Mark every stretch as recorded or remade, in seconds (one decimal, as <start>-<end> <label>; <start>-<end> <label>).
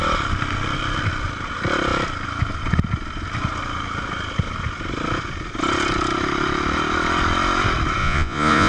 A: 0.0-8.0 recorded; 8.0-8.7 remade